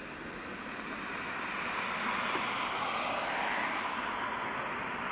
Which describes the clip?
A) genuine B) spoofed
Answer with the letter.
A